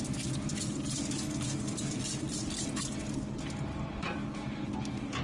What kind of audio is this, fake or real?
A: real